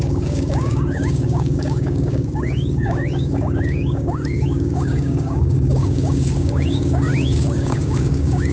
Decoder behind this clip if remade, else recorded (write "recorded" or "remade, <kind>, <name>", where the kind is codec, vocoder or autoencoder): remade, codec, DAC